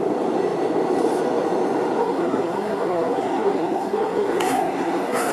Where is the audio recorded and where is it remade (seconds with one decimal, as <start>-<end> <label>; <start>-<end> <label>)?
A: 0.0-2.0 recorded; 2.0-5.3 remade